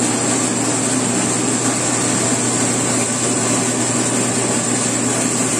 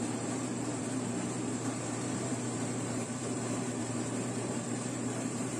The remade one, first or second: second